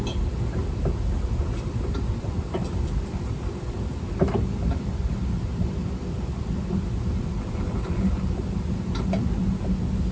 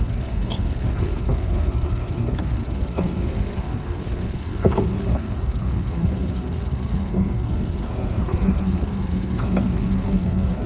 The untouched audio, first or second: first